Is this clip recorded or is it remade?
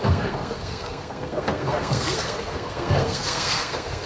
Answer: remade